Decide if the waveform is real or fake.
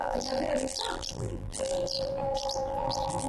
fake